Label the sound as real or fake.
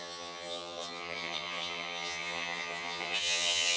fake